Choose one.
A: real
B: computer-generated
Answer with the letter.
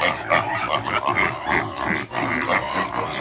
A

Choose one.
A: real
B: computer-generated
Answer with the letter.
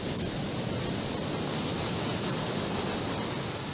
A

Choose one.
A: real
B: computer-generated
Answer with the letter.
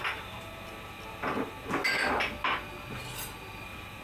A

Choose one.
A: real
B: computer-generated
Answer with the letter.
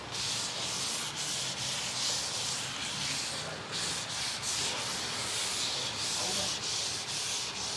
A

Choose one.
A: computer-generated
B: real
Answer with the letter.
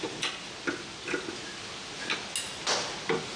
B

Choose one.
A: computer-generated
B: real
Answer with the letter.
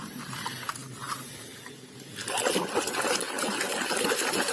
B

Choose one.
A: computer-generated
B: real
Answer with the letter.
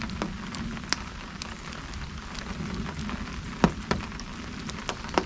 B